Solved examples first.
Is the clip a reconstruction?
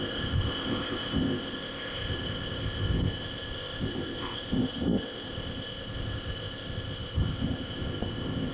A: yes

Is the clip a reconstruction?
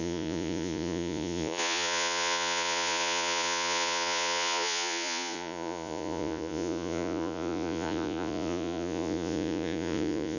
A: yes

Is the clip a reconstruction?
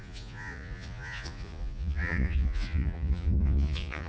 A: yes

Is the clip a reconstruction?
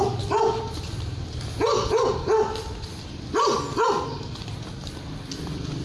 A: no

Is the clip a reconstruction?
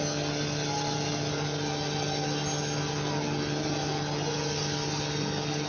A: no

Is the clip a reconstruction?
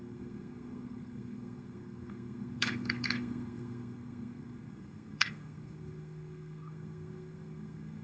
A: yes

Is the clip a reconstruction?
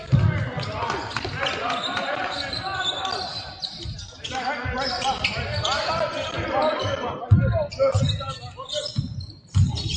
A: no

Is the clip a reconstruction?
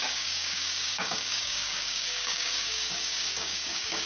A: yes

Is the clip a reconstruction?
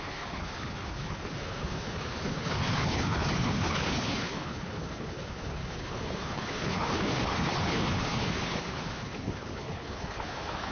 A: yes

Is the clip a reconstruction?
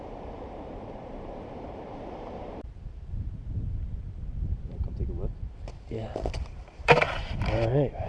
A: yes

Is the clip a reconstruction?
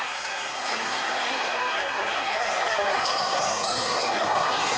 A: yes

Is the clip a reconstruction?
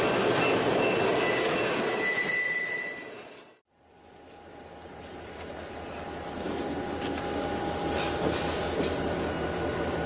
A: no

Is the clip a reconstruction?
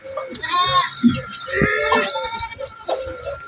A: no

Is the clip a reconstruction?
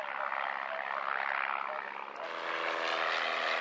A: no